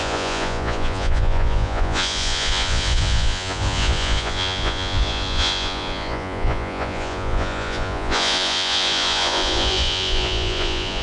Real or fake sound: fake